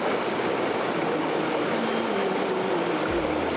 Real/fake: real